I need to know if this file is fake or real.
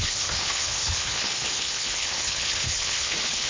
fake